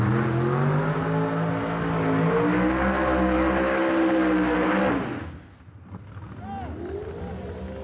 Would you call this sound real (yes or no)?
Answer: yes